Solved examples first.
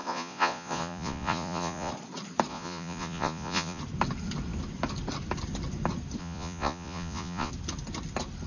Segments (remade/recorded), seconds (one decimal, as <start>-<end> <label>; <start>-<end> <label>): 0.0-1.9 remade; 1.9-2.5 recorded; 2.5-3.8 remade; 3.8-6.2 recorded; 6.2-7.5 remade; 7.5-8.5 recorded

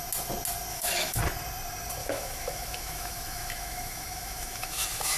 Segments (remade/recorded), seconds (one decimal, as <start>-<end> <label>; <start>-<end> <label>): 0.0-0.7 recorded; 0.7-1.2 remade; 1.2-2.0 recorded; 2.0-5.2 remade

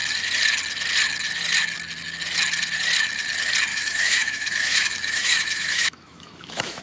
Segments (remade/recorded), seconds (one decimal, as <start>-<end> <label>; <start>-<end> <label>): 0.0-3.7 recorded; 3.7-6.8 remade

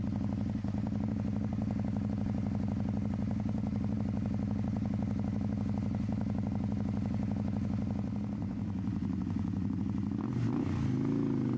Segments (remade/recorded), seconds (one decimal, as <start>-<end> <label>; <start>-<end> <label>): 0.0-8.4 recorded; 8.4-9.8 remade; 9.8-11.6 recorded

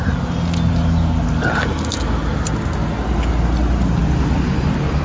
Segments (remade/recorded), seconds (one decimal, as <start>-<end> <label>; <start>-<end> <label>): 0.0-5.0 recorded

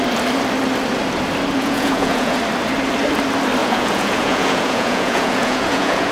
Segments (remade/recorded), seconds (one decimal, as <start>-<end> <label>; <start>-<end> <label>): 0.0-1.6 recorded; 1.6-2.4 remade; 2.4-3.6 recorded; 3.6-6.1 remade